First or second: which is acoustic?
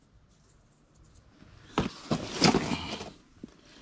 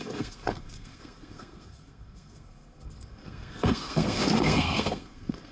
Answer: first